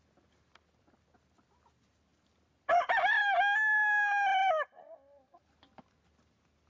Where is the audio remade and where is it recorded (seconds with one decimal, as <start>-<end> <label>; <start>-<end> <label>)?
0.0-6.7 recorded